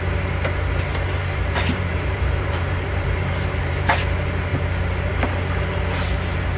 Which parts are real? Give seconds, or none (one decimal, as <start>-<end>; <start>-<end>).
0.0-0.9; 4.0-6.6

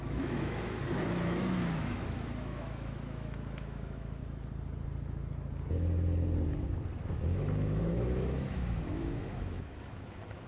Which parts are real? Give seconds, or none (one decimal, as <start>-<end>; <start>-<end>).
4.2-7.1

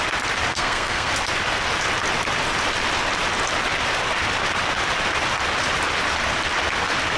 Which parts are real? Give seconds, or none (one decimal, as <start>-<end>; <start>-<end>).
0.0-0.5; 1.1-7.2

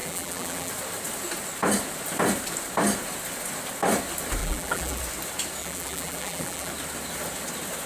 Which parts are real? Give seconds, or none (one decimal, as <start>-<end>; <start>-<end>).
0.7-4.4; 5.0-5.6; 6.7-7.9